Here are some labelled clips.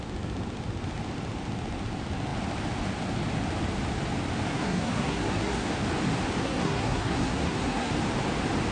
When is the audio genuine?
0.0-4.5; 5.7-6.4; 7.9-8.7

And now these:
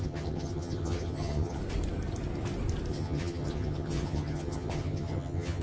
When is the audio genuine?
1.6-2.9

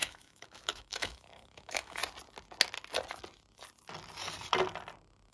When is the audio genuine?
2.0-5.3

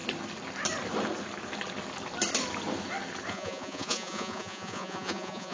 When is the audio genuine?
0.0-3.3

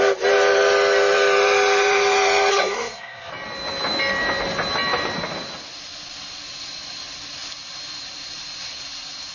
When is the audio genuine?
0.0-2.5; 3.3-9.3

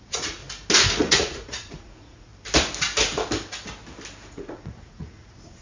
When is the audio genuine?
0.4-1.0; 2.3-4.3

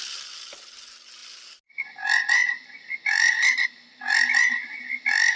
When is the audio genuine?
0.0-2.4; 3.9-5.4